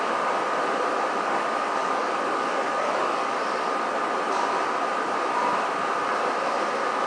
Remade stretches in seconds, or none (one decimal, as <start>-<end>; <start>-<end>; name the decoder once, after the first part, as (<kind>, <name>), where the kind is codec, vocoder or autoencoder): 1.8-3.3 (codec, DAC)